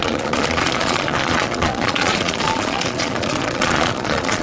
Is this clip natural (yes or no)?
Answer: no